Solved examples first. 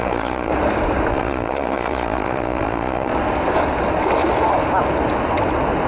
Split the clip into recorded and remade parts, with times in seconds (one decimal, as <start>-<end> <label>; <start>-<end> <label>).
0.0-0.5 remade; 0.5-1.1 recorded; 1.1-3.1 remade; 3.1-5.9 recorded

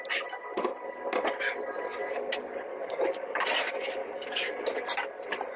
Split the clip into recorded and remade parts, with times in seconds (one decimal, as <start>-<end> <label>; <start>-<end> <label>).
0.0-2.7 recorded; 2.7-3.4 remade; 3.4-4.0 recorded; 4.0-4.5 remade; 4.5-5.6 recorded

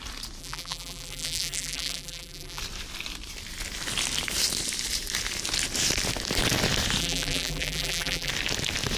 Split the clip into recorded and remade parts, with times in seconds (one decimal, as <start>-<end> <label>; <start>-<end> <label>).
0.0-0.4 recorded; 0.4-2.6 remade; 2.6-7.0 recorded; 7.0-8.3 remade; 8.3-9.0 recorded

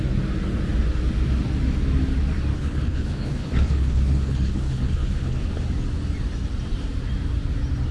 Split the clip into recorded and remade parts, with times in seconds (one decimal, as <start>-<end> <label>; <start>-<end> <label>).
0.0-2.5 recorded; 2.5-5.5 remade; 5.5-7.9 recorded

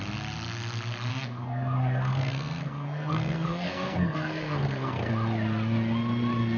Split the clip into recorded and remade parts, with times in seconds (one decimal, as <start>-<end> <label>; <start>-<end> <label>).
0.0-1.1 recorded; 1.1-5.1 remade; 5.1-6.6 recorded

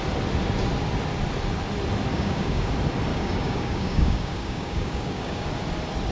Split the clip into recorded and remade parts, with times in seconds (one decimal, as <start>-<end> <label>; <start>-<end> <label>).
0.0-2.1 recorded; 2.1-2.7 remade; 2.7-3.1 recorded; 3.1-5.4 remade; 5.4-6.1 recorded